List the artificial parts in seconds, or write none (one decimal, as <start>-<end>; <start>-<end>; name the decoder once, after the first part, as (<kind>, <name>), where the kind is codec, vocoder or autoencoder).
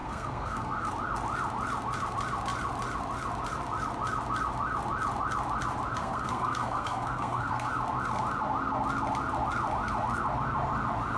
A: 0.0-0.9 (codec, SNAC); 6.0-7.7